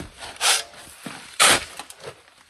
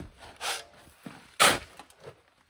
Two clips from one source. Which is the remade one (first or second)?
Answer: first